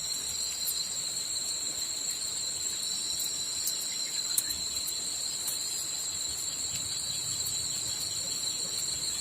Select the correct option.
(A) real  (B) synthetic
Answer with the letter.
A